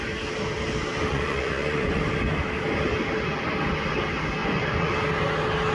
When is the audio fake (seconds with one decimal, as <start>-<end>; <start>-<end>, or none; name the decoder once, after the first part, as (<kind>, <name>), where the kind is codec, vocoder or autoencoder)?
1.1-2.0 (vocoder, Vocos); 4.4-4.9